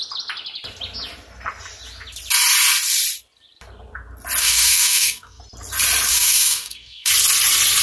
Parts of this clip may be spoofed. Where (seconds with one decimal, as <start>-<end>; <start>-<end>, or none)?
4.4-5.4; 6.1-7.1